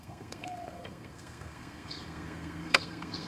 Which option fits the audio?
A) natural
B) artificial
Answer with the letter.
B